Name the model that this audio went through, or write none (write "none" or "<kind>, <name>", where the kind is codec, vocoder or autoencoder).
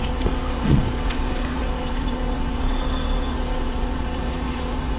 vocoder, Vocos